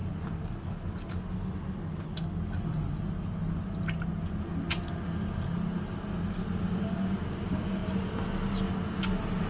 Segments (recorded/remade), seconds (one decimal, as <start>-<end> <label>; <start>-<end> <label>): 0.0-9.5 recorded